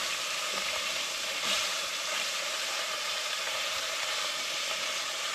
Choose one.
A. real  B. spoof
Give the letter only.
B